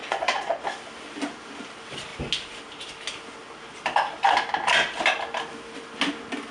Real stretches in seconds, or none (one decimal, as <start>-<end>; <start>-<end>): 0.6-6.5